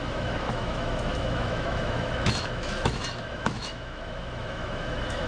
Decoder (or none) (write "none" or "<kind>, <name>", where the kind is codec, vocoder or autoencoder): autoencoder, DAC-VAE